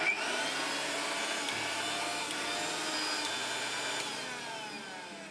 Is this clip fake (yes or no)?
no